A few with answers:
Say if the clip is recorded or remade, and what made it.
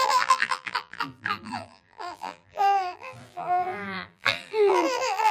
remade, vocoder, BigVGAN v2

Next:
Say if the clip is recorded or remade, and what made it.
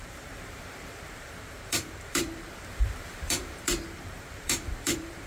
remade, vocoder, BigVGAN v2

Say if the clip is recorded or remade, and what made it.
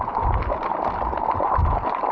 remade, vocoder, BigVGAN v2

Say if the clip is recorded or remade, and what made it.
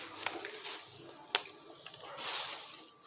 recorded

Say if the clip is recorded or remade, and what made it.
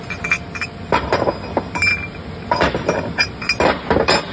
recorded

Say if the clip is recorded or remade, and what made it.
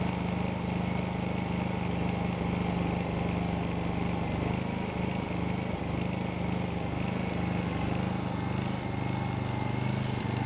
recorded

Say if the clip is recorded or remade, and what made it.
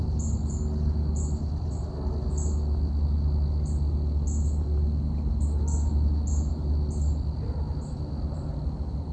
recorded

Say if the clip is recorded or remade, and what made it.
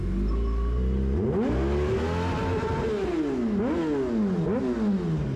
recorded